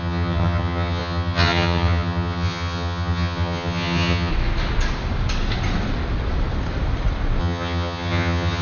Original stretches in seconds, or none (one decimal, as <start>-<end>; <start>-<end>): 4.3-7.4